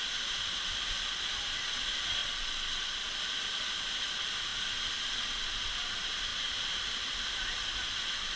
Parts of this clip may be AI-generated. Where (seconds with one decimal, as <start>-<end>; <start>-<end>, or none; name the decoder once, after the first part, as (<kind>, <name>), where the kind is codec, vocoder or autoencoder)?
2.2-3.2 (vocoder, Vocos)